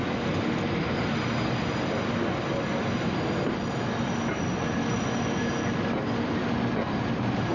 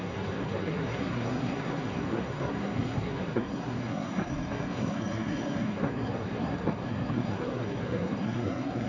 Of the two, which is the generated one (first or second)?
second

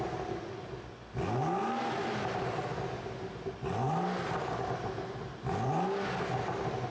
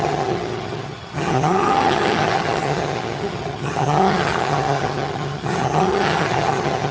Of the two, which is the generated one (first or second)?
second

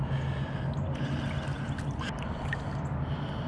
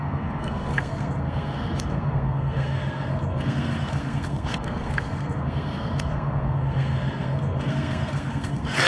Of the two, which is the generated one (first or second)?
second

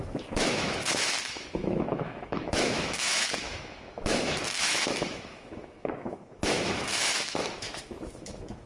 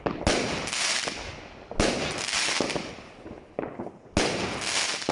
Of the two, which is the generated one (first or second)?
first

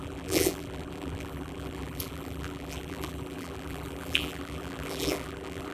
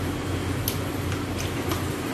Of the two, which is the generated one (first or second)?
first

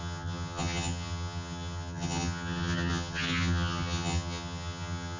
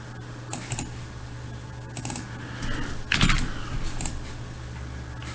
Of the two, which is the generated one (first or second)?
first